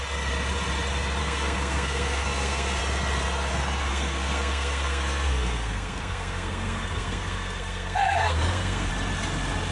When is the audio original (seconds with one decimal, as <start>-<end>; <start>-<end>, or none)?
0.0-1.2; 2.8-3.9; 8.9-9.7